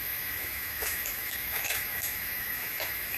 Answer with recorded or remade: remade